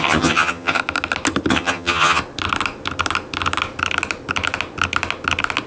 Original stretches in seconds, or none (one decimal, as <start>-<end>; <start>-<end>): 0.8-1.5; 2.2-5.7